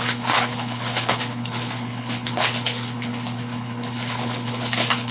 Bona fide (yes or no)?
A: no